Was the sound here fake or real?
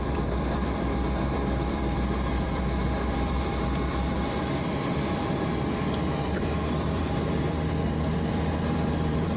fake